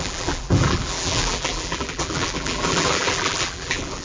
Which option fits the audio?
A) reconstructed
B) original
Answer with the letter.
A